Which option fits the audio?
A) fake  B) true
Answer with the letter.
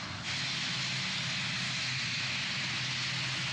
B